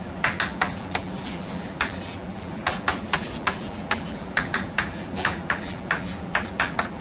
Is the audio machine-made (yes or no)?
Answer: yes